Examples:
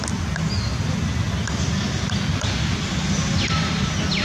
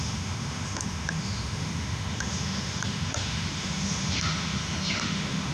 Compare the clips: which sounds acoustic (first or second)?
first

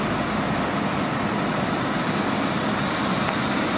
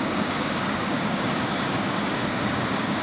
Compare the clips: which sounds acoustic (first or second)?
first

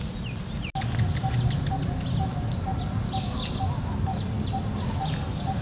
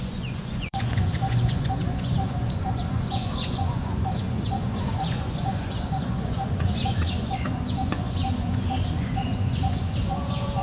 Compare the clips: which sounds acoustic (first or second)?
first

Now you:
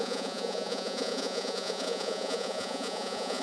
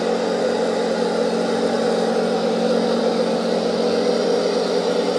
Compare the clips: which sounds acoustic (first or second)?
second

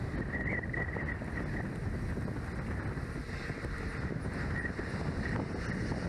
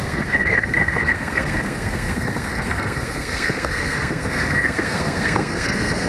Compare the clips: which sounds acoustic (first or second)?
first